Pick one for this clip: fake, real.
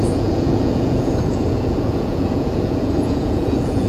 fake